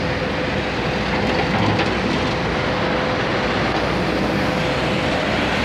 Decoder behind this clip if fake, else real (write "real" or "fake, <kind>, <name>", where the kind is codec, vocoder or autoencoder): real